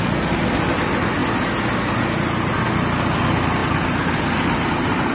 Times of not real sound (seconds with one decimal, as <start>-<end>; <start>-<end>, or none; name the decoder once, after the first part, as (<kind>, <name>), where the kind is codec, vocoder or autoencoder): none